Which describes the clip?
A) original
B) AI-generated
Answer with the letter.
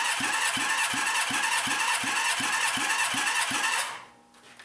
A